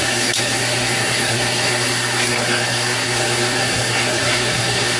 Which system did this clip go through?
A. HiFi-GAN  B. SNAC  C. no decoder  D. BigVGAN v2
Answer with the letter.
B